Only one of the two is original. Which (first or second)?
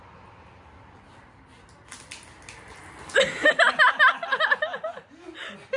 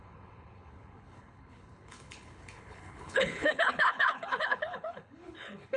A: first